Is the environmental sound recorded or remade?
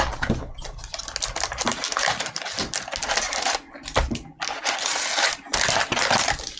recorded